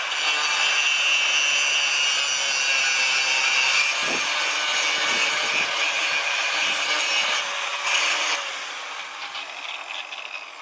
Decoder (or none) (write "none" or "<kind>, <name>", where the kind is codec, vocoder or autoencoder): none